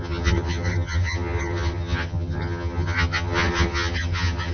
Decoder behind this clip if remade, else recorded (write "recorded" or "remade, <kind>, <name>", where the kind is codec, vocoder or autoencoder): remade, vocoder, HiFi-GAN